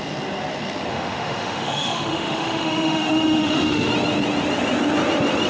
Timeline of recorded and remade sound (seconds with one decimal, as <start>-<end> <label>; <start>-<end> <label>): 0.0-0.9 recorded; 0.9-3.9 remade; 3.9-5.5 recorded